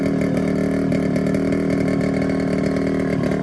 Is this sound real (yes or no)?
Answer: yes